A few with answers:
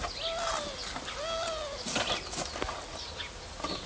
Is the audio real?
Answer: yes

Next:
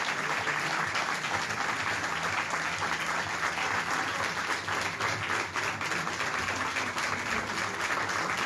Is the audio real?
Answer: yes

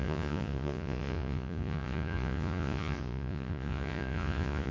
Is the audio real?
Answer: no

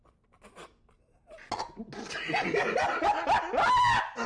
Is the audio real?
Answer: yes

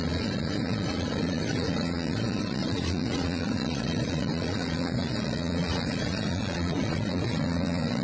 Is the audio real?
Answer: no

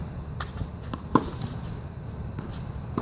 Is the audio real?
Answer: yes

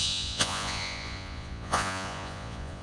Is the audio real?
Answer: no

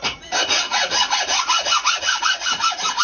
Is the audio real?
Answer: no